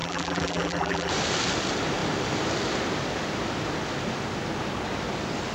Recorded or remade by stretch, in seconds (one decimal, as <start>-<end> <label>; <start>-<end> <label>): 0.0-1.1 remade; 1.1-5.5 recorded